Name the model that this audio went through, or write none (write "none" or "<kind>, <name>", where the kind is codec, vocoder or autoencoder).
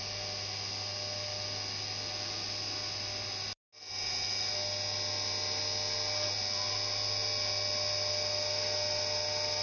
none